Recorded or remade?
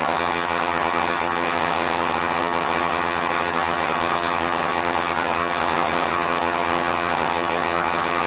remade